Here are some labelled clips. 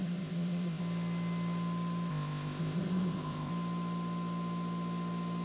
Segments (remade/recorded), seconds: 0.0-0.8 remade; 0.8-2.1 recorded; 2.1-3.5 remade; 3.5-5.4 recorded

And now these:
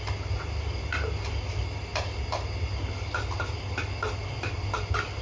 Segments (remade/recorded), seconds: 0.0-5.2 recorded

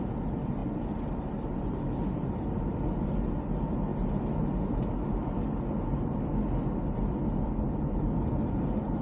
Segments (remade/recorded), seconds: 0.0-9.0 recorded

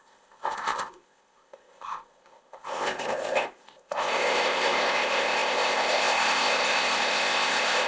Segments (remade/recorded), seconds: 0.0-7.9 remade

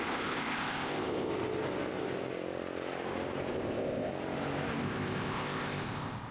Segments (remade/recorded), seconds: 0.0-1.3 remade; 1.3-3.5 recorded; 3.5-4.1 remade; 4.1-4.8 recorded; 4.8-6.3 remade

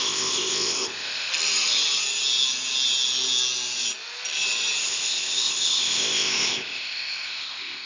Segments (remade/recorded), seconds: 0.0-1.3 remade; 1.3-4.8 recorded; 4.8-7.9 remade